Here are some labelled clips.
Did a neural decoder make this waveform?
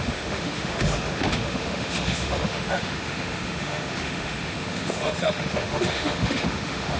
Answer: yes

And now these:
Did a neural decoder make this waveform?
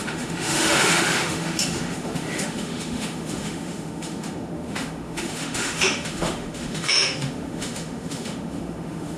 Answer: yes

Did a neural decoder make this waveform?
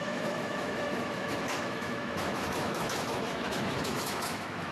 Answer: yes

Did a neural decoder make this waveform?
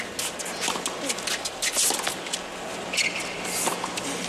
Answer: no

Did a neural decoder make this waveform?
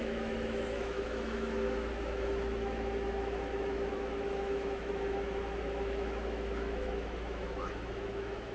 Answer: yes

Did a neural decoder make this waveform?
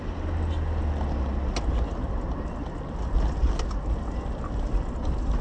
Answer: no